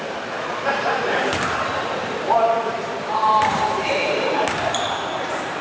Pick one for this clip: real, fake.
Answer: fake